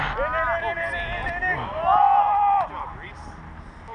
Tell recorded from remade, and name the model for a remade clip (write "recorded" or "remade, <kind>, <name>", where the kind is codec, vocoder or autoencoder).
recorded